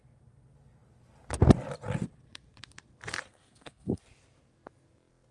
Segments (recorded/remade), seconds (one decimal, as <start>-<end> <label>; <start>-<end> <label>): 0.0-3.3 recorded; 3.3-4.0 remade; 4.0-5.3 recorded